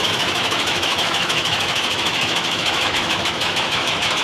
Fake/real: fake